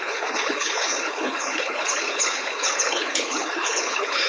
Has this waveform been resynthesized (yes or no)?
yes